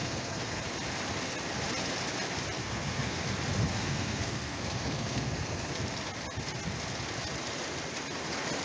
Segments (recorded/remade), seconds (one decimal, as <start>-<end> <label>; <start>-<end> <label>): 0.0-0.6 remade; 0.6-2.6 recorded; 2.6-3.2 remade; 3.2-3.7 recorded; 3.7-5.8 remade; 5.8-8.6 recorded